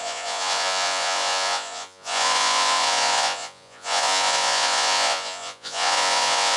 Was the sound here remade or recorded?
remade